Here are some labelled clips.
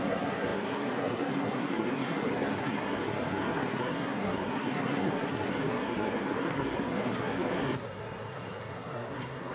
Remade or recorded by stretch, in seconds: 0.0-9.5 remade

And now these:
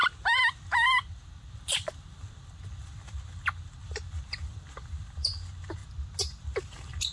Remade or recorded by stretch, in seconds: 0.0-5.8 remade; 5.8-6.4 recorded; 6.4-7.1 remade